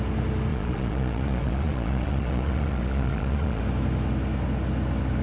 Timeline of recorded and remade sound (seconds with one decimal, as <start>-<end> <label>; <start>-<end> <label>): 0.0-0.5 recorded; 0.5-3.6 remade; 3.6-5.2 recorded